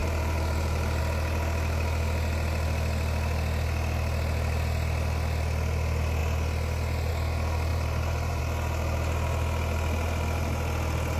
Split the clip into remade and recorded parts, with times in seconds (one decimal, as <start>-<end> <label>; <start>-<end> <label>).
0.0-1.0 remade; 1.0-7.7 recorded; 7.7-8.4 remade; 8.4-11.2 recorded